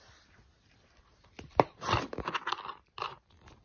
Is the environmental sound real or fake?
real